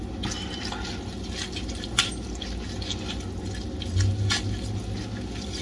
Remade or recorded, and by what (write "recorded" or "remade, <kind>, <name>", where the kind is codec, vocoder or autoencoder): recorded